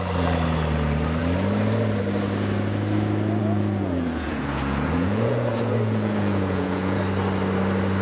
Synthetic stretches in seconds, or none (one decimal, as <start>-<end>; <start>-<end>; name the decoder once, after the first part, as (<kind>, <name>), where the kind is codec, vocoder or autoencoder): 3.4-7.0 (vocoder, Vocos)